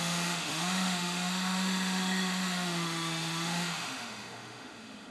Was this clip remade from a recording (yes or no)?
yes